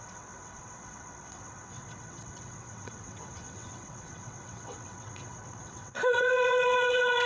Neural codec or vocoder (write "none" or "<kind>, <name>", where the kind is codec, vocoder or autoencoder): vocoder, WaveNeXt